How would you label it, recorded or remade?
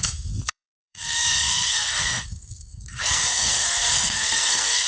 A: remade